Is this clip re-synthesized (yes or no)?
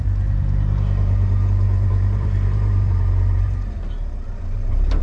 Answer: yes